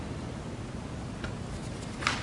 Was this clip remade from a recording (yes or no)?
no